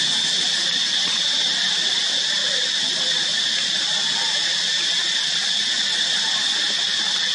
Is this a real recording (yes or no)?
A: yes